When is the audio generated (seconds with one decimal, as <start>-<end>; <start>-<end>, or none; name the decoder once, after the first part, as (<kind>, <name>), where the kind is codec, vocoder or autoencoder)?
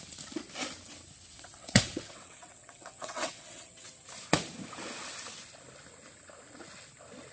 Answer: 1.3-3.9 (vocoder, WaveNeXt)